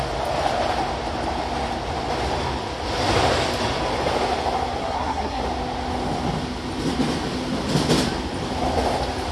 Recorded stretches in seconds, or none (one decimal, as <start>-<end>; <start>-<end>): 0.0-4.8; 5.4-9.3